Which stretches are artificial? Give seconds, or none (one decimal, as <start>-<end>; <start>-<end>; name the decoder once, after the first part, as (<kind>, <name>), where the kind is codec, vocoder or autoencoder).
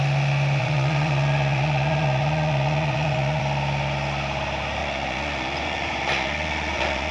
0.6-3.4 (vocoder, Vocos); 4.8-7.1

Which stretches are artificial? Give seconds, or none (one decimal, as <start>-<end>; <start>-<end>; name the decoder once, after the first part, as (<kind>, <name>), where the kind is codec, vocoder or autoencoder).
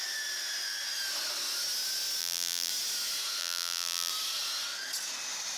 2.2-2.7 (vocoder, BigVGAN v2); 3.4-4.1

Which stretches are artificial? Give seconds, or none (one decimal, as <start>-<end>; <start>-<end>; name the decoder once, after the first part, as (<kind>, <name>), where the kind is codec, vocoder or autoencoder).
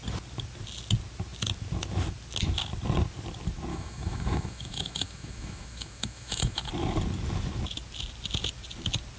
3.7-6.7 (autoencoder, DAC-VAE)